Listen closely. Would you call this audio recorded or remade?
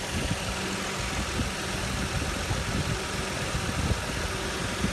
recorded